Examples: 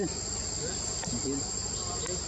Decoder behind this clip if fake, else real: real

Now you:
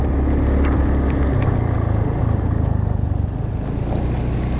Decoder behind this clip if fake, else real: real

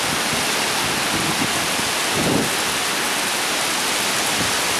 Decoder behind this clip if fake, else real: real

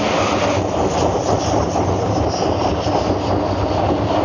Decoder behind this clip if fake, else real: real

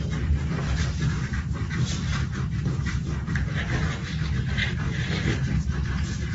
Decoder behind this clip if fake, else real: real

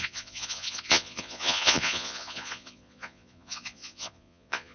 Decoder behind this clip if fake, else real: fake, vocoder, Vocos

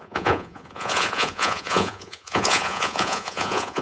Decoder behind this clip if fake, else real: fake, vocoder, Vocos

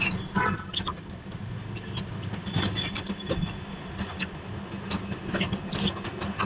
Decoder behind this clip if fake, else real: real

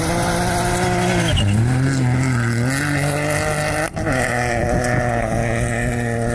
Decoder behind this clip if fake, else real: real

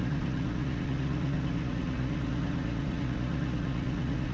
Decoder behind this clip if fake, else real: fake, vocoder, Vocos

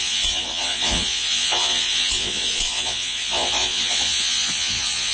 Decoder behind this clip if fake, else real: fake, vocoder, Vocos